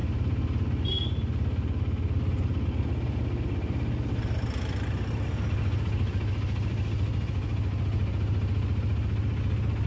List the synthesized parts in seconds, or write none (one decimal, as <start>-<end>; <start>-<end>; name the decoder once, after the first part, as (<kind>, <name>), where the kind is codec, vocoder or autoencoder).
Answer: none